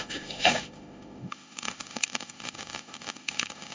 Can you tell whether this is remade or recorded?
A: remade